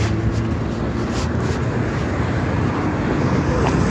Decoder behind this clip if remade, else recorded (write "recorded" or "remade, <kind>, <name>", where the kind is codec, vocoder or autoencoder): recorded